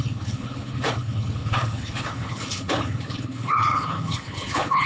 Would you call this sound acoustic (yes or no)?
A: no